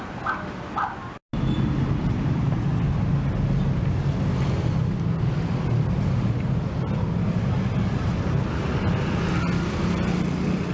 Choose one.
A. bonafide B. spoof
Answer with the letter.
A